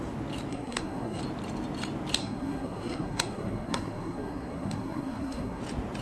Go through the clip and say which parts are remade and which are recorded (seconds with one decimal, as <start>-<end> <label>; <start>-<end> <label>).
0.0-0.5 recorded; 0.5-1.2 remade; 1.2-2.2 recorded; 2.2-5.6 remade; 5.6-6.0 recorded